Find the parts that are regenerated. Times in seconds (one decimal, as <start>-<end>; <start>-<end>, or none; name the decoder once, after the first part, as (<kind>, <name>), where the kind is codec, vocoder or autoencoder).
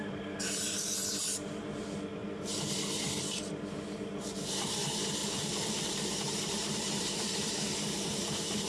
0.0-5.2 (vocoder, BigVGAN v2); 5.9-8.7